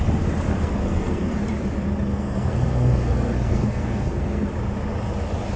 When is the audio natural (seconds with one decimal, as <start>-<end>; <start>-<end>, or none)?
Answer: 0.0-0.5; 1.4-2.1; 4.5-5.6

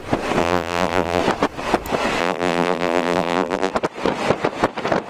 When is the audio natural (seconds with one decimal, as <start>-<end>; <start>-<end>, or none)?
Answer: 0.0-0.4; 1.2-2.2; 3.7-5.1

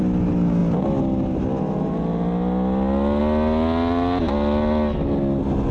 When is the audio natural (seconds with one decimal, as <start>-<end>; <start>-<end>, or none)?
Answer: 0.0-5.7

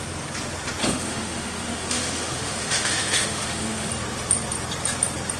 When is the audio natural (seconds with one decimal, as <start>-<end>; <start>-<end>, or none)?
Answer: 0.0-0.8; 3.9-5.4

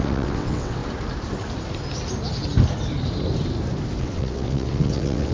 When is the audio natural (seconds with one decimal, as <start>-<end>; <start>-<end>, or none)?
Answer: 0.8-4.0

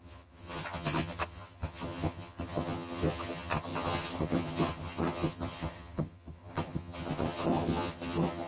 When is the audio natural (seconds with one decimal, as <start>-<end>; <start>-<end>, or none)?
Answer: none

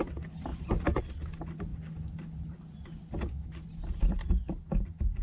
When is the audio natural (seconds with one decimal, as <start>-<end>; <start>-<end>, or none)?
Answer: 0.0-5.2